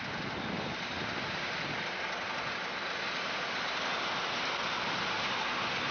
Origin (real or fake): real